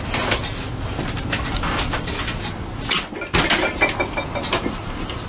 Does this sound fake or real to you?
real